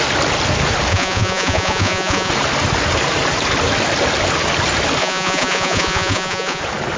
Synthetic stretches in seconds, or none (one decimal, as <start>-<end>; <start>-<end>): 0.9-2.3; 5.0-6.6